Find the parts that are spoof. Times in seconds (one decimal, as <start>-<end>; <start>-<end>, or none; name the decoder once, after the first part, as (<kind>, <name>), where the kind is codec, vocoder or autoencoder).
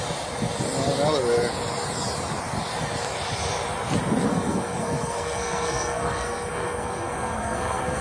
4.3-8.0 (codec, SNAC)